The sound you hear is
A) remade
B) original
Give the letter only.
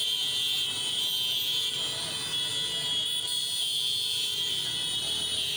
B